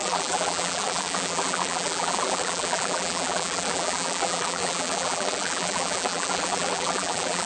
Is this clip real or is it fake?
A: fake